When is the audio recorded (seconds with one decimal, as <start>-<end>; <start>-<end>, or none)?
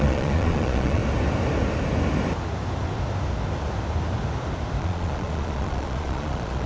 1.0-4.8